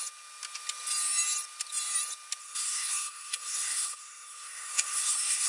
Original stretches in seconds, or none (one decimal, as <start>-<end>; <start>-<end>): 0.0-2.4